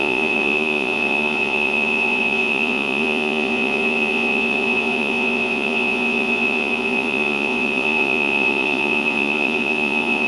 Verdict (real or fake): fake